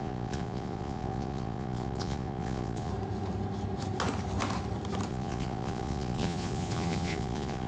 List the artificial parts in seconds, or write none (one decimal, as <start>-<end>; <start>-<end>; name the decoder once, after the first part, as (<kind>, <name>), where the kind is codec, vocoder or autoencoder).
0.0-2.9 (vocoder, Vocos); 5.1-7.7